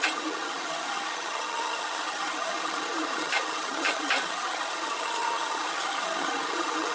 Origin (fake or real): fake